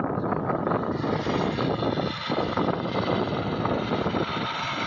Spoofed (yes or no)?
no